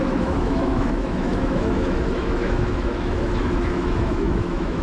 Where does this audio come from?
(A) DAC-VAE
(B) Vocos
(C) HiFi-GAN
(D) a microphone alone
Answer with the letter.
A